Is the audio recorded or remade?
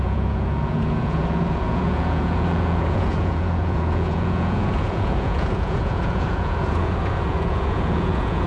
remade